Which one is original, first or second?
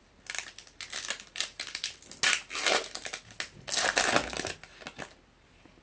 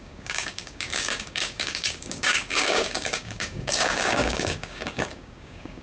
first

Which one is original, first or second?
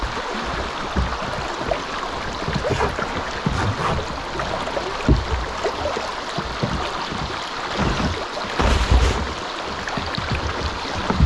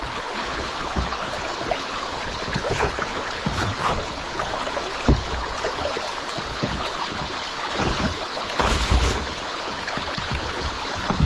first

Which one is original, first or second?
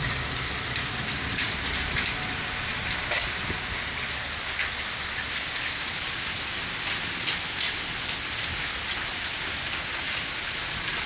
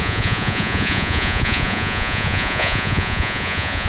first